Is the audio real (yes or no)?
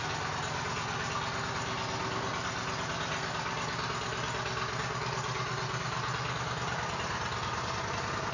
yes